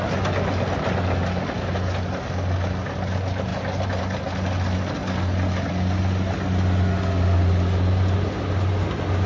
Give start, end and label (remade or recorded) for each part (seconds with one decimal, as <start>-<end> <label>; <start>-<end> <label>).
0.0-9.3 recorded